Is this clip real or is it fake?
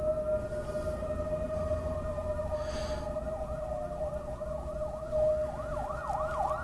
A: real